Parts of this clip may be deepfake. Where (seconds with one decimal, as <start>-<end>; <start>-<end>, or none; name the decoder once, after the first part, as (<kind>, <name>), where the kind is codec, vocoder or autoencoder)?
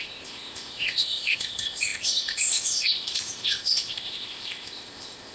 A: 0.0-5.3 (codec, ZipCodec)